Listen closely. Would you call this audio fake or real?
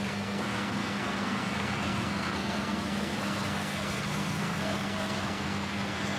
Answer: fake